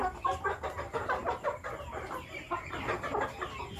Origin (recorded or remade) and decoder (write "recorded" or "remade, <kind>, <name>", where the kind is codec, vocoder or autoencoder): recorded